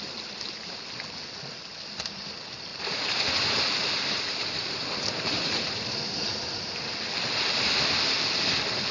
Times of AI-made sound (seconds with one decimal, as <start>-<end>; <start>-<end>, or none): none